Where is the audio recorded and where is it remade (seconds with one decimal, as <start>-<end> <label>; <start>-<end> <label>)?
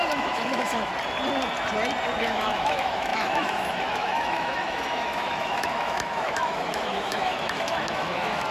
0.0-0.9 remade; 0.9-2.2 recorded; 2.2-8.5 remade